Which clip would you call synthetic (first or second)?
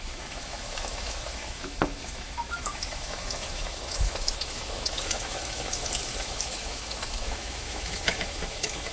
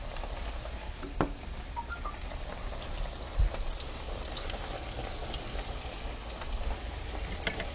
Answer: first